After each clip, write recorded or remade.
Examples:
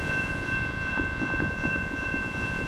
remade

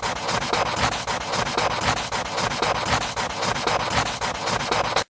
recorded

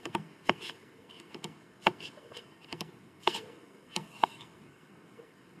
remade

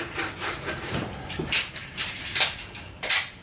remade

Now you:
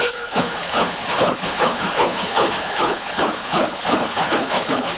remade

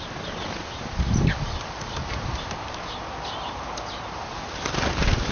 recorded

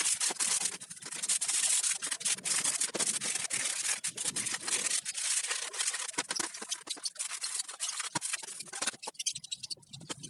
remade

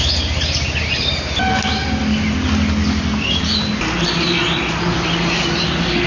recorded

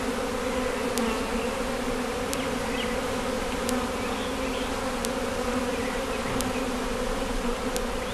recorded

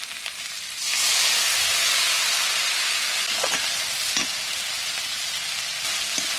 recorded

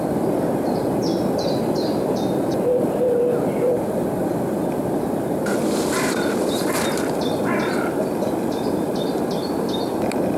remade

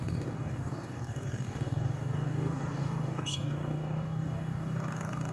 remade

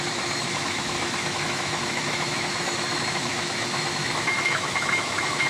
remade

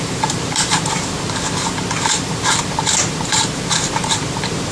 remade